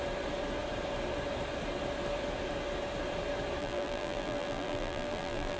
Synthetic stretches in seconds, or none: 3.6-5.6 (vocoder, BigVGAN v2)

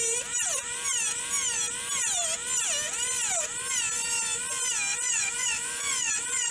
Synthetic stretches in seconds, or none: 4.9-6.5 (vocoder, Vocos)

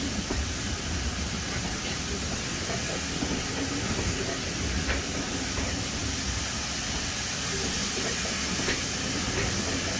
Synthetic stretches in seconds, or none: none

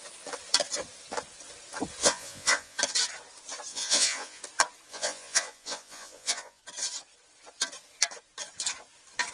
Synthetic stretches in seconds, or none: 2.0-2.8 (vocoder, Vocos); 3.7-4.4; 4.9-6.6

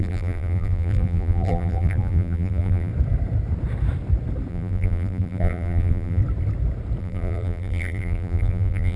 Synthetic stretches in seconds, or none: 0.0-2.9 (vocoder, BigVGAN v2); 4.5-6.2; 7.0-9.0

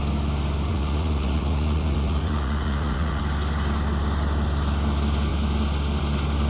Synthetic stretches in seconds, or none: 0.7-3.2 (vocoder, Vocos)

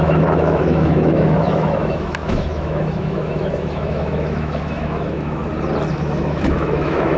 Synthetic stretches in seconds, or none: 0.0-5.4 (autoencoder, DAC-VAE); 5.9-7.2

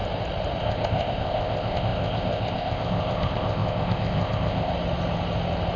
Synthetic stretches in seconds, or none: 0.6-4.7 (codec, ZipCodec)